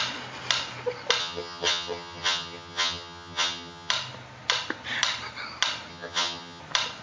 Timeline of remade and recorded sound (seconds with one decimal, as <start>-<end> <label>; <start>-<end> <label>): 0.0-1.2 recorded; 1.2-3.9 remade; 3.9-5.9 recorded; 5.9-6.6 remade; 6.6-7.0 recorded